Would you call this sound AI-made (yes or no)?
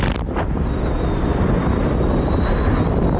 no